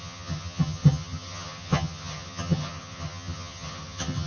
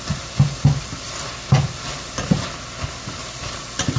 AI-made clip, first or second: first